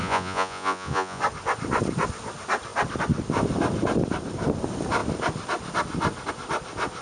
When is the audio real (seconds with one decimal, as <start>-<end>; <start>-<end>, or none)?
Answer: 1.2-7.0